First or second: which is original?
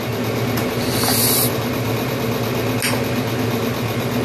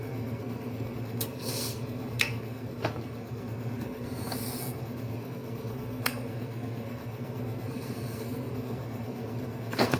first